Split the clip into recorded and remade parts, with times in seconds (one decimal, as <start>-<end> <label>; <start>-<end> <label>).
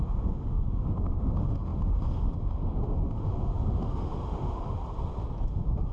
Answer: 0.0-4.8 remade; 4.8-5.5 recorded; 5.5-5.9 remade